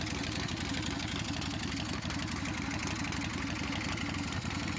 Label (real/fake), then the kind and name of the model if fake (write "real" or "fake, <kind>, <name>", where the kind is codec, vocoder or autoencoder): real